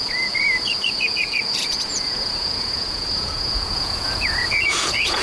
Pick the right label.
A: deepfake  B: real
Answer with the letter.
A